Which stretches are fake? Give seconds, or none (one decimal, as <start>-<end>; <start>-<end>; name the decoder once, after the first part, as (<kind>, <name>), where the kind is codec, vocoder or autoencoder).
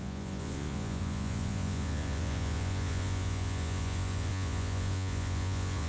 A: 0.0-5.9 (vocoder, Vocos)